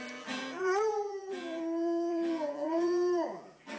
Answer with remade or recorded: remade